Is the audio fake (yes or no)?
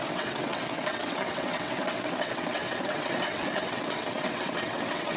yes